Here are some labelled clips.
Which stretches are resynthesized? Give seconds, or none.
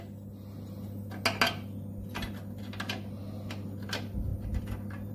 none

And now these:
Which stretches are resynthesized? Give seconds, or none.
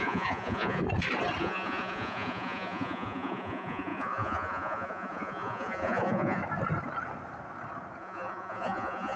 0.0-0.8; 1.4-6.4; 8.0-9.2